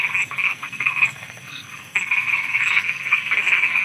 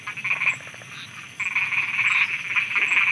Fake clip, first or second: first